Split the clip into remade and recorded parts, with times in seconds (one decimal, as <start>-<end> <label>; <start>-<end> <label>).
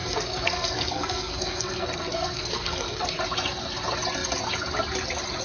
0.0-3.2 remade; 3.2-5.4 recorded